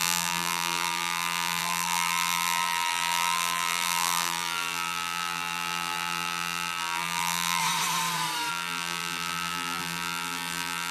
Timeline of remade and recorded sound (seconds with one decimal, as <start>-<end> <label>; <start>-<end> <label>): 0.0-7.6 remade; 7.6-8.5 recorded; 8.5-10.9 remade